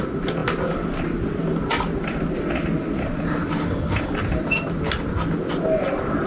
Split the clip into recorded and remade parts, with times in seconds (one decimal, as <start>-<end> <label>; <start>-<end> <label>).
0.0-6.3 recorded